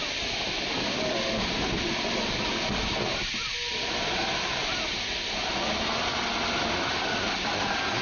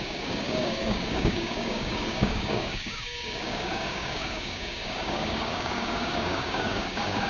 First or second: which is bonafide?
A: first